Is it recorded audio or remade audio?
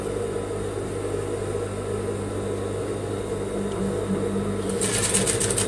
recorded